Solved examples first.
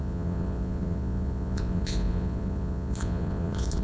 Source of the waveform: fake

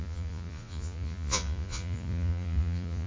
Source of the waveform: fake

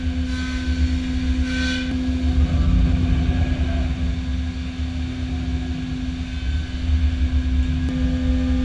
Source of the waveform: real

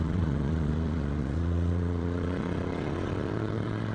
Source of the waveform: fake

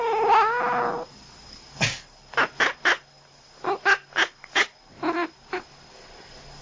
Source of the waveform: real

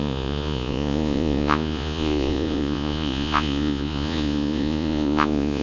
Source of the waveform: fake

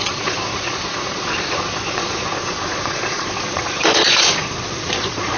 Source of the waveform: fake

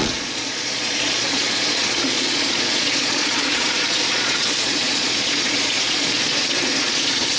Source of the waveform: fake